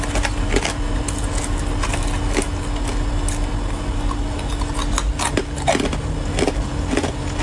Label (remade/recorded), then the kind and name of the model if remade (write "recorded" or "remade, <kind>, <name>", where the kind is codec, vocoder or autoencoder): recorded